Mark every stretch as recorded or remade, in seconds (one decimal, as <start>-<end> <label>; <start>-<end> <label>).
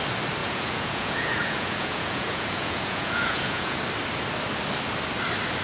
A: 0.0-0.4 recorded; 0.4-3.8 remade; 3.8-5.6 recorded